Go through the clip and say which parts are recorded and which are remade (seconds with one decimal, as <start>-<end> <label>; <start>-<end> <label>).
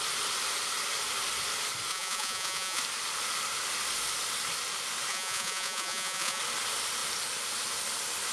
0.0-1.9 recorded; 1.9-2.8 remade; 2.8-5.1 recorded; 5.1-6.4 remade; 6.4-8.3 recorded